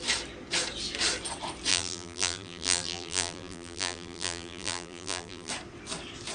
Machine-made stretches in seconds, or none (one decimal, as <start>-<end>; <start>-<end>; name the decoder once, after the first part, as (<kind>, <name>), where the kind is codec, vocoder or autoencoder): 1.7-5.5 (vocoder, BigVGAN v2)